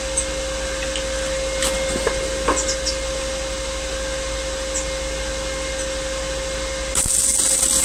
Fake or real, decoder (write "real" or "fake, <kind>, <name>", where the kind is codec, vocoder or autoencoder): real